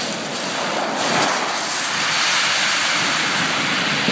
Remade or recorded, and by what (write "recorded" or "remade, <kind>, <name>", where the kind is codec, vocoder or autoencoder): recorded